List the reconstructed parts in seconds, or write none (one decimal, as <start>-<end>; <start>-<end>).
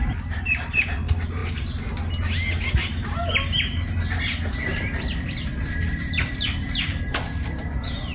0.0-1.4; 4.6-8.1